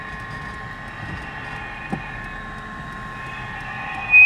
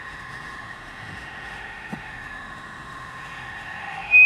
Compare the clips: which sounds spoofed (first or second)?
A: second